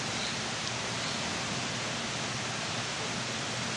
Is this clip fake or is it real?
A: real